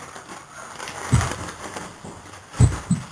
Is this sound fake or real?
real